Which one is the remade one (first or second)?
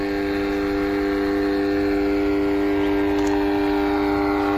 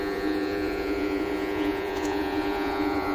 second